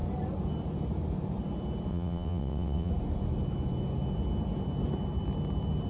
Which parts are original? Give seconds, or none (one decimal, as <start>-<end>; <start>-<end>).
0.0-1.9; 2.9-5.9